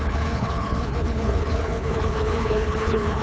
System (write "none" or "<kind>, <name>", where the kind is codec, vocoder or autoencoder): codec, HILCodec